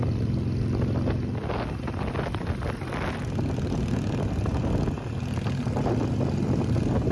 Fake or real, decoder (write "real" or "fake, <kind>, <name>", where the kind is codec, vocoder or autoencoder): real